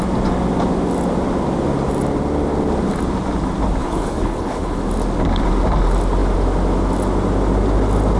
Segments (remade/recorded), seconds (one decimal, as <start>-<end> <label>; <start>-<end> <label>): 0.0-3.8 recorded; 3.8-4.8 remade; 4.8-8.2 recorded